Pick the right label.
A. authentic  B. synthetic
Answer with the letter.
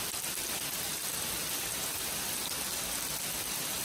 A